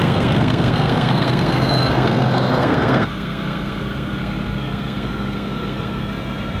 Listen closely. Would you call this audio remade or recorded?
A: remade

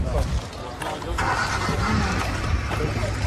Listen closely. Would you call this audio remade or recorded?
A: recorded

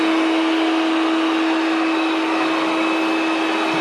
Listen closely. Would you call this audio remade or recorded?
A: recorded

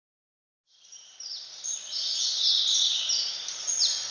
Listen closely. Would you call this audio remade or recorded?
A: recorded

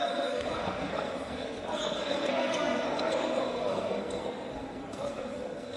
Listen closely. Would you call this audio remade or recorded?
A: remade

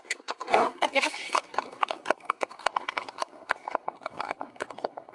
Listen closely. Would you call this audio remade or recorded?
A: remade